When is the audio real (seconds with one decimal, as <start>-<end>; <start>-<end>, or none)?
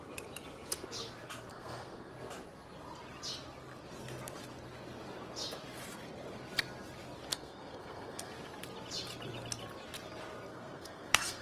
0.0-1.5; 2.1-7.3; 8.3-10.5